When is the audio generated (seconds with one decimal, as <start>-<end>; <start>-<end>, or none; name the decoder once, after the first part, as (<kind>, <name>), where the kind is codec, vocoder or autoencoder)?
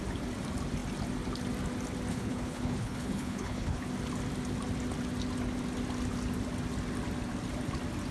2.1-3.9 (codec, HILCodec)